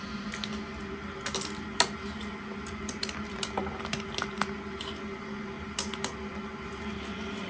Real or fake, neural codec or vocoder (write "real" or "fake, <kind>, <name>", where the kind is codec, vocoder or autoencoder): real